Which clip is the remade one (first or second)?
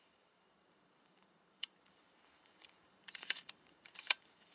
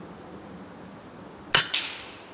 first